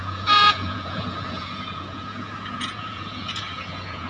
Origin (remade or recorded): remade